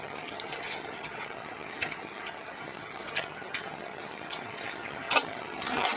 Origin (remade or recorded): remade